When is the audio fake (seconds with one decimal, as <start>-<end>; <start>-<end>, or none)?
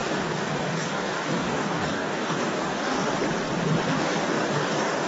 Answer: 0.0-3.1; 3.9-5.1